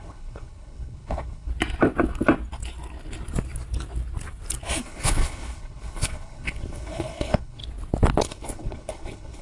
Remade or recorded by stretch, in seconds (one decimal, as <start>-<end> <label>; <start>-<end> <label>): 0.0-1.5 remade; 1.5-4.8 recorded; 4.8-7.6 remade; 7.6-8.2 recorded; 8.2-9.4 remade